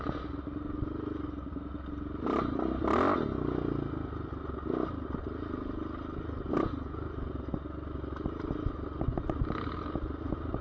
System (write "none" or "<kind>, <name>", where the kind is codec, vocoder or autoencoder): none